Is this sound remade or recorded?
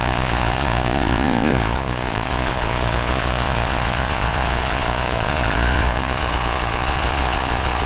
remade